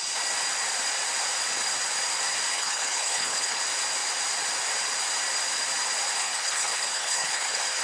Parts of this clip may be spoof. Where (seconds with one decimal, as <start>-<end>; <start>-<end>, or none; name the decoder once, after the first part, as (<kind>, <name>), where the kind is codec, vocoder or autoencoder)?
2.5-3.6 (codec, HILCodec); 6.2-7.8